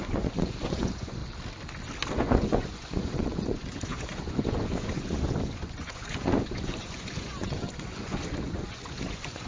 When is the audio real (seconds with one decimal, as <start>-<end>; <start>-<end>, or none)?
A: 1.2-2.1